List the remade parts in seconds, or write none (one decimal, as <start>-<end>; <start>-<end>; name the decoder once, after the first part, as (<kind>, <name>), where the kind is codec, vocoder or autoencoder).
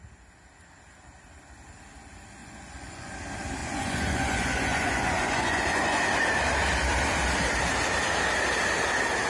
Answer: 2.4-3.1 (vocoder, Vocos); 3.6-6.0